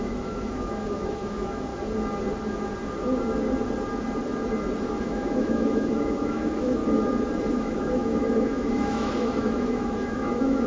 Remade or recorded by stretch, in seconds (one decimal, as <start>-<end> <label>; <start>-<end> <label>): 0.0-1.7 remade; 1.7-5.0 recorded; 5.0-6.8 remade; 6.8-7.5 recorded; 7.5-10.7 remade

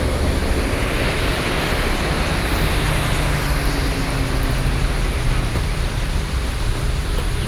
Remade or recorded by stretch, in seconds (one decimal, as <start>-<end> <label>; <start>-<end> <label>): 0.0-7.5 recorded

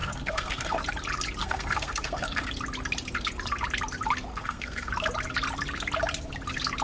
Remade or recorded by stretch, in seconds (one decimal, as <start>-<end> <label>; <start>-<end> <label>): 0.0-0.8 remade; 0.8-1.4 recorded; 1.4-2.5 remade; 2.5-4.3 recorded; 4.3-4.9 remade; 4.9-6.8 recorded

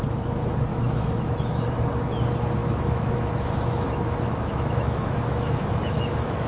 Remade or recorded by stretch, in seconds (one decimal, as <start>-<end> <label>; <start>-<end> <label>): 0.0-0.7 recorded; 0.7-2.2 remade; 2.2-2.6 recorded; 2.6-6.5 remade

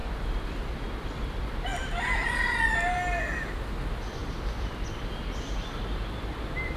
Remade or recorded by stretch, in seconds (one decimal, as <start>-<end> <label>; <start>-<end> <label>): 0.0-0.6 remade; 0.6-1.8 recorded; 1.8-2.6 remade; 2.6-6.8 recorded

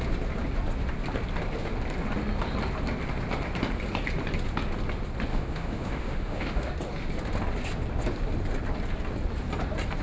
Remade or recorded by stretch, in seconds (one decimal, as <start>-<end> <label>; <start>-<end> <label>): 0.0-5.3 recorded; 5.3-6.7 remade; 6.7-10.0 recorded